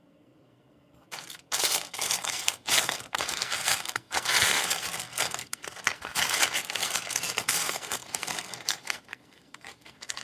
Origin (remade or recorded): remade